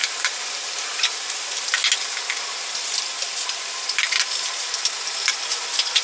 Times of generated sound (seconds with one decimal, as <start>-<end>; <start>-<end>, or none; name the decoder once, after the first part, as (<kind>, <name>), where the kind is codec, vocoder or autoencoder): 0.0-1.6 (vocoder, BigVGAN v2)